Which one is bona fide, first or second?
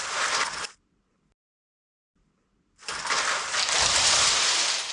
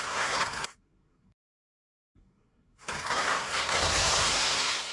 first